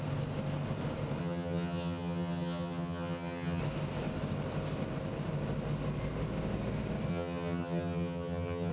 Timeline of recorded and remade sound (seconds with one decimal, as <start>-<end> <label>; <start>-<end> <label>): 0.0-1.2 recorded; 1.2-3.6 remade; 3.6-7.1 recorded; 7.1-8.7 remade